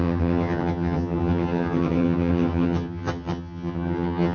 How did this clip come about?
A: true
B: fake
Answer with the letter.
B